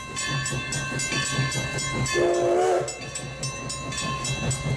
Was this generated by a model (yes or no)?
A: no